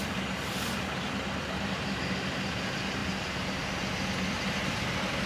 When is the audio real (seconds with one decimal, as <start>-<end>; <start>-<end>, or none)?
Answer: 0.0-5.3

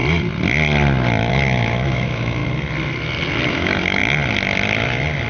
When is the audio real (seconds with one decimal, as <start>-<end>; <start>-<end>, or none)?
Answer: 0.0-1.3; 2.4-3.5; 4.0-5.3

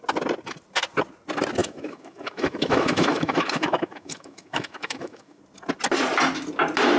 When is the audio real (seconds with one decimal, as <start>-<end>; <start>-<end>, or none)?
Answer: 0.0-1.6; 5.4-7.0

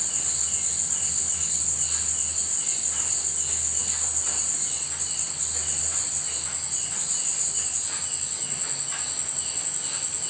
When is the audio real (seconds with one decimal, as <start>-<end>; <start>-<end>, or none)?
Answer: 0.0-10.3

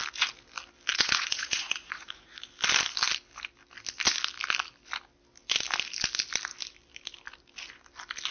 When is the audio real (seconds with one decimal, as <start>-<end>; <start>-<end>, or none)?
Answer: 0.0-0.9; 2.4-8.3

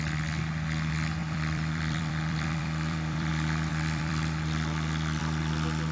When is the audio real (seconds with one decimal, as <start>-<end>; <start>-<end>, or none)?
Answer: 0.0-1.2; 3.3-3.7; 5.2-5.9

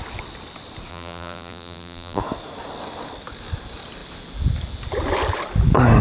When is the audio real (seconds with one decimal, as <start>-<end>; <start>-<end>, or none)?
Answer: 0.0-0.9; 2.2-6.0

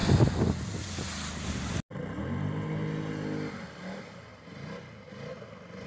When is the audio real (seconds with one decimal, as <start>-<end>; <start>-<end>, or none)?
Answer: 0.0-5.9